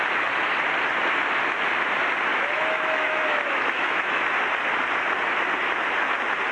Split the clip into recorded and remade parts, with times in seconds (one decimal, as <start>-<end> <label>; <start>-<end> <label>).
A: 0.0-2.3 recorded; 2.3-4.2 remade; 4.2-6.5 recorded